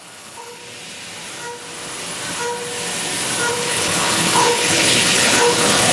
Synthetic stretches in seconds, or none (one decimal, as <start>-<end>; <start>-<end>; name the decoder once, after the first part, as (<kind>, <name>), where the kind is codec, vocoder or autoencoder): 0.0-0.6 (codec, HILCodec); 3.5-5.9